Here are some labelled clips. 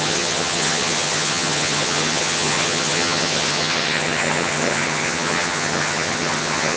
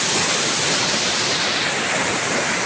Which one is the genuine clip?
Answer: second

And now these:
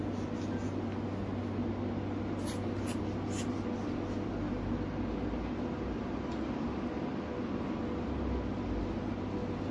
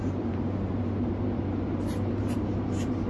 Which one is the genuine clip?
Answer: first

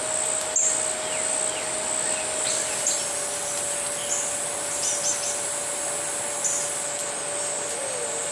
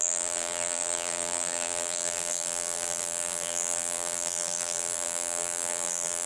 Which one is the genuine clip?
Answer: first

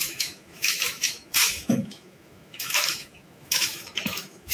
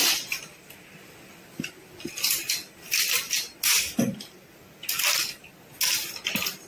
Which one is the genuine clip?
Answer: second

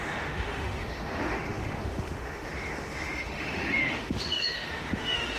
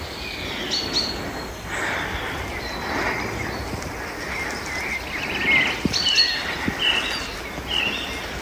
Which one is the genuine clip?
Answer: second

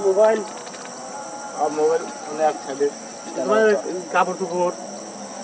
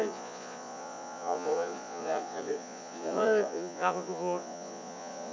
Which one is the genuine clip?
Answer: first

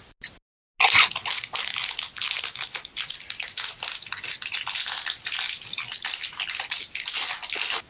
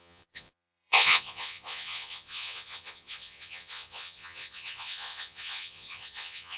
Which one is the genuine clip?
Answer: first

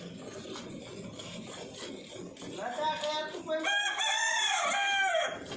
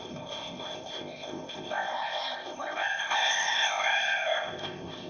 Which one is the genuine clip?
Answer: first